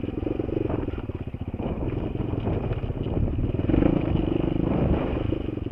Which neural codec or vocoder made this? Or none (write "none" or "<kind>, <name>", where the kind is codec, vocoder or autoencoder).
none